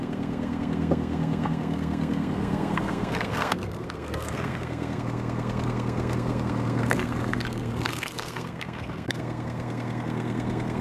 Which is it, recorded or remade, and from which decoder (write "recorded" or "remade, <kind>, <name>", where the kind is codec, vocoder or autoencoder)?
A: remade, codec, SNAC